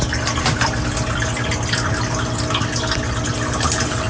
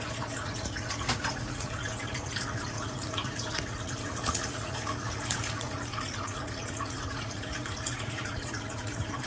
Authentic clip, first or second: first